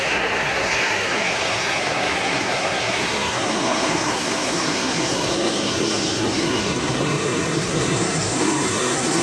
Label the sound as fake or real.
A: fake